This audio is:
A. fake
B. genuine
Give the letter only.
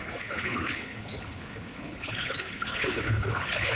A